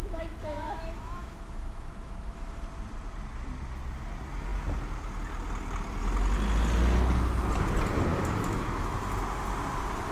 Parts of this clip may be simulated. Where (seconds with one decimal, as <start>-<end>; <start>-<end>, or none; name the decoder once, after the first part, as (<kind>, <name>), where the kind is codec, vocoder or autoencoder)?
0.0-2.6 (autoencoder, DAC-VAE); 8.1-9.1